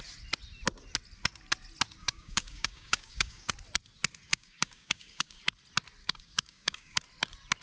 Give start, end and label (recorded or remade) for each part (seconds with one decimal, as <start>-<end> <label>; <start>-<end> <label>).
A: 0.0-2.0 recorded; 2.0-3.5 remade; 3.5-4.3 recorded; 4.3-5.4 remade; 5.4-6.0 recorded; 6.0-7.0 remade; 7.0-7.6 recorded